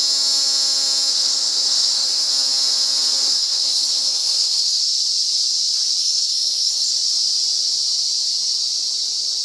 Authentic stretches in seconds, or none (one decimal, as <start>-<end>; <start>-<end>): 0.0-1.1; 2.3-3.2; 4.8-6.0; 6.9-9.4